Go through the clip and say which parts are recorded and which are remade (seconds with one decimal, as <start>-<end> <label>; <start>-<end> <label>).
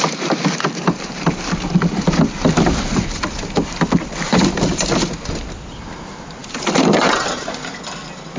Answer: 0.0-8.4 recorded